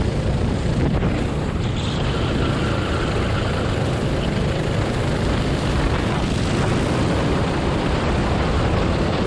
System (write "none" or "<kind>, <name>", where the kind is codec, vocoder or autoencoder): vocoder, BigVGAN v2